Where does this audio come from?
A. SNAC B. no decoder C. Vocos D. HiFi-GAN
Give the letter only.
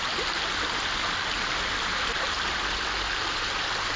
B